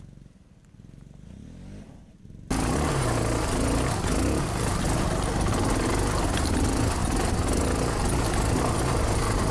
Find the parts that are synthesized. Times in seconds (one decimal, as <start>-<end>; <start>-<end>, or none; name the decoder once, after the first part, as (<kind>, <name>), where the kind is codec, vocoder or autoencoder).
none